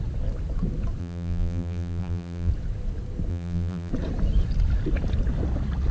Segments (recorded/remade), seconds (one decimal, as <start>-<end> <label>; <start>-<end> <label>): 0.0-1.0 recorded; 1.0-2.5 remade; 2.5-3.3 recorded; 3.3-3.9 remade; 3.9-5.9 recorded

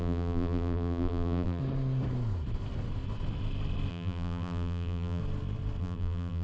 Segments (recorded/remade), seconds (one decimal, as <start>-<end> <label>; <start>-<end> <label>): 0.0-1.6 remade; 1.6-3.9 recorded; 3.9-5.2 remade; 5.2-5.8 recorded; 5.8-6.4 remade

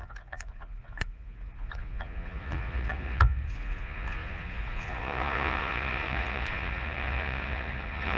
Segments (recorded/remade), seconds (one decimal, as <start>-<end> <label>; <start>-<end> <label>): 0.0-8.2 remade

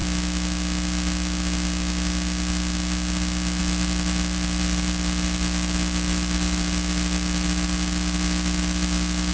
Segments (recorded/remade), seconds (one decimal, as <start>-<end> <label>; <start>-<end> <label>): 0.0-3.6 recorded; 3.6-9.3 remade

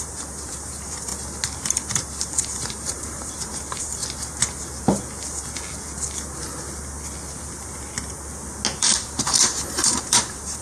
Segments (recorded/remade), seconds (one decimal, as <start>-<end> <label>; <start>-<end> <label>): 0.0-1.1 remade; 1.1-1.6 recorded; 1.6-4.0 remade; 4.0-8.8 recorded; 8.8-10.6 remade

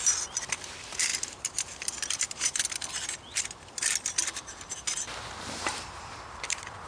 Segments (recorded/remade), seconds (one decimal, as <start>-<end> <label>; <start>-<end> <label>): 0.0-6.9 recorded